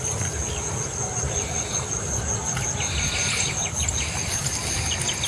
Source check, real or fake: real